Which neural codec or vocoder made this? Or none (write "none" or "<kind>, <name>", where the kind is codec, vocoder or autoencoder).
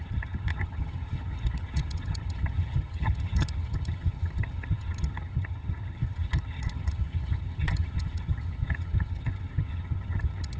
vocoder, HiFi-GAN